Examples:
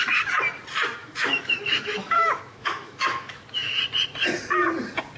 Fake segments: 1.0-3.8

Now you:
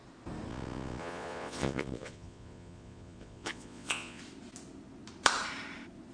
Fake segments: 0.5-4.2

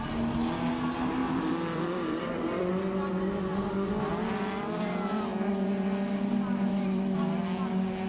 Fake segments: 1.2-2.7

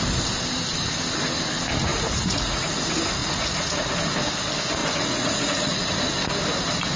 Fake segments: 1.9-2.7; 3.2-3.9; 4.8-5.9

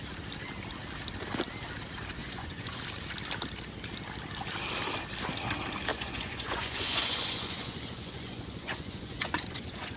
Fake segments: 2.2-2.8; 5.9-10.0

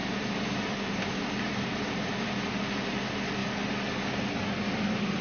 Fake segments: 0.0-2.1

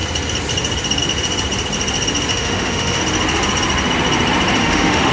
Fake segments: 2.3-3.0; 4.6-5.1

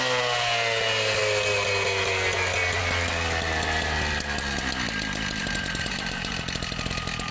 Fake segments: 5.4-6.3